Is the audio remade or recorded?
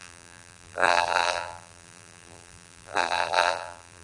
remade